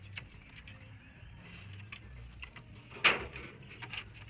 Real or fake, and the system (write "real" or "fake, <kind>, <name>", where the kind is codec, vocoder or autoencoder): real